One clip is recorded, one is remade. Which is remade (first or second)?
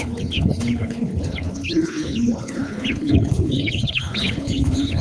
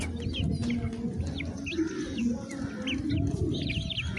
first